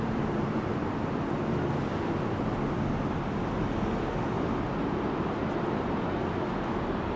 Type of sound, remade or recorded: recorded